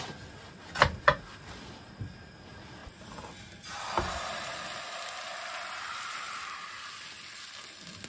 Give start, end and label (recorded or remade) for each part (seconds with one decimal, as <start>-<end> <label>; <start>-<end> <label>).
0.0-8.1 recorded